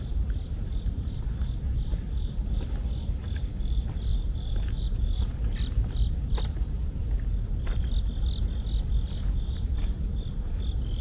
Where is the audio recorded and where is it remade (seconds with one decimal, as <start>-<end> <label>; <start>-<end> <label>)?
0.0-4.1 recorded; 4.1-5.3 remade; 5.3-11.0 recorded